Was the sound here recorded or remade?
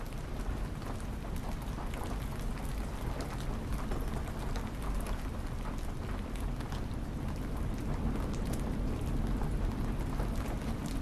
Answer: recorded